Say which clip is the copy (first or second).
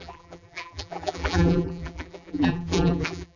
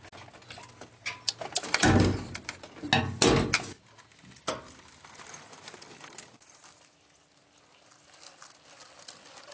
first